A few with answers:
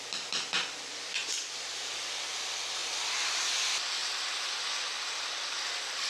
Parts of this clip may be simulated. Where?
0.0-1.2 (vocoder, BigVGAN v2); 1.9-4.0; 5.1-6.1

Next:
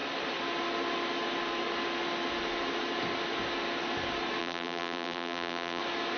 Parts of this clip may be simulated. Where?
4.4-5.8 (vocoder, BigVGAN v2)